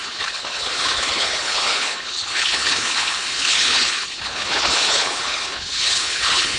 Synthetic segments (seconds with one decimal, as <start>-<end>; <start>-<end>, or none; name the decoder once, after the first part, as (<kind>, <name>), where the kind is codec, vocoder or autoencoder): 0.0-6.6 (codec, HILCodec)

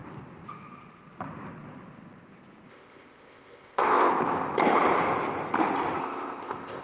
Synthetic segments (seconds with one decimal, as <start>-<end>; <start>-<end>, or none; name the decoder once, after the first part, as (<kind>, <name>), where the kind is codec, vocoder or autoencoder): 2.7-4.1 (codec, ZipCodec); 6.0-6.8

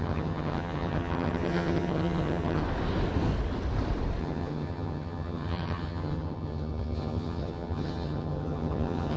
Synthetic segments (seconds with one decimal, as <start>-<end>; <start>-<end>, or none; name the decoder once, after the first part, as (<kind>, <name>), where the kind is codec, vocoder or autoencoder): 0.0-2.6 (vocoder, HiFi-GAN); 4.2-9.2

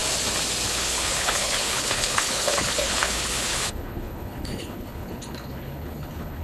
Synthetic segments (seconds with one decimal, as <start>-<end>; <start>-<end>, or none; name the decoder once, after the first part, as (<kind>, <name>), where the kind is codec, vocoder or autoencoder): 0.7-6.4 (codec, HILCodec)